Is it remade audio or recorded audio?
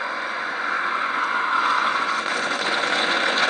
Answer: remade